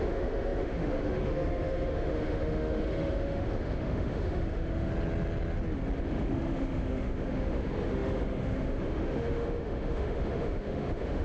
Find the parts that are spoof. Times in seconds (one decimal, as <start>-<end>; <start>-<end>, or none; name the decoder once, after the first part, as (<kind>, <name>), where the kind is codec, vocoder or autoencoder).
0.0-4.9 (autoencoder, DAC-VAE); 6.0-11.2